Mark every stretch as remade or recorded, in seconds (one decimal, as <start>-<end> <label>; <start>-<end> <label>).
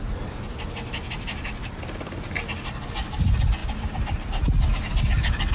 0.0-5.5 recorded